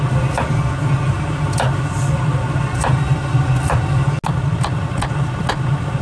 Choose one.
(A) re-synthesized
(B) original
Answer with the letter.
B